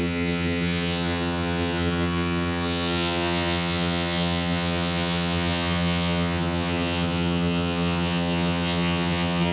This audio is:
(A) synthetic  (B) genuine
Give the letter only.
A